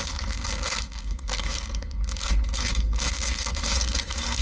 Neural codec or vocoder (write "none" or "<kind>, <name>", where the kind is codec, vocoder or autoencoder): codec, SNAC